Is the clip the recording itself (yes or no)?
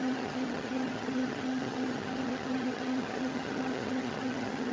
no